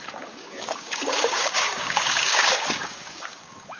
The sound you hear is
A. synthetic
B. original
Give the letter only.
A